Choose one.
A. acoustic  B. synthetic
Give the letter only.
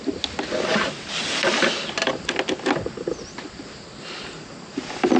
A